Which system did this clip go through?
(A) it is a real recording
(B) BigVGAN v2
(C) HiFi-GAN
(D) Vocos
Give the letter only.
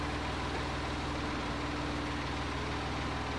A